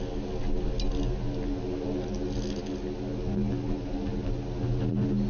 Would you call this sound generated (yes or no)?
no